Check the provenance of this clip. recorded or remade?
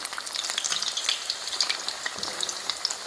recorded